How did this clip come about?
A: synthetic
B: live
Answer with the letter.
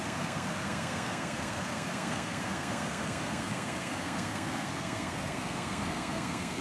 A